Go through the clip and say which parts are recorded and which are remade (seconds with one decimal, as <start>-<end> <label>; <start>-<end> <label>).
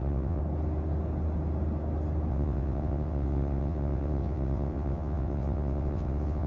0.0-0.4 remade; 0.4-2.3 recorded; 2.3-6.5 remade